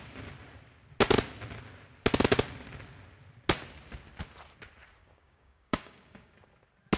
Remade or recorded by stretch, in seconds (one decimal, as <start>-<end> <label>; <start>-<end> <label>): 0.0-5.0 recorded; 5.0-6.3 remade; 6.3-7.0 recorded

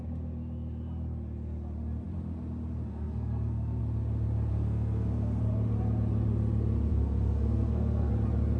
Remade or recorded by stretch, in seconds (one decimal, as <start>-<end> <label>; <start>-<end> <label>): 0.0-2.9 recorded; 2.9-3.8 remade; 3.8-4.5 recorded; 4.5-5.4 remade; 5.4-6.9 recorded; 6.9-8.1 remade; 8.1-8.6 recorded

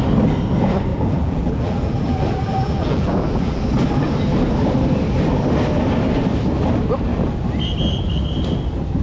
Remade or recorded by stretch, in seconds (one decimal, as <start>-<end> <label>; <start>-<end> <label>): 0.0-0.9 recorded; 0.9-3.6 remade; 3.6-9.0 recorded

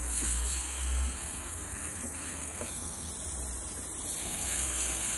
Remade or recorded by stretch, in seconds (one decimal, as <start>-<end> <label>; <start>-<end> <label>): 0.0-3.1 remade; 3.1-4.2 recorded; 4.2-5.2 remade